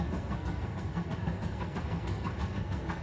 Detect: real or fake fake